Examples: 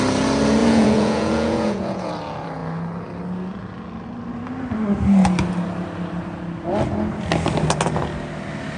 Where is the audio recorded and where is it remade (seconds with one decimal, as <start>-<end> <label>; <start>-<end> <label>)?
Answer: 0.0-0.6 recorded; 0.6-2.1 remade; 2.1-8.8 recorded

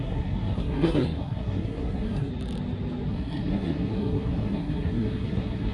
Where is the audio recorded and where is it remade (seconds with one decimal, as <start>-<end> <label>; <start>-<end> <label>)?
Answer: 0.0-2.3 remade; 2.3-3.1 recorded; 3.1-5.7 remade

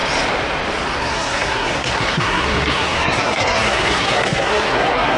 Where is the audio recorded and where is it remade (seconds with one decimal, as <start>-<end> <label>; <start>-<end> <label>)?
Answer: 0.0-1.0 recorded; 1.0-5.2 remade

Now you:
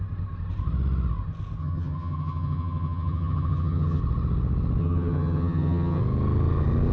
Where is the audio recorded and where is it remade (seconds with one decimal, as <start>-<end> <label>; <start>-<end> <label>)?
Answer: 0.0-1.6 recorded; 1.6-4.0 remade; 4.0-4.8 recorded; 4.8-6.0 remade; 6.0-6.9 recorded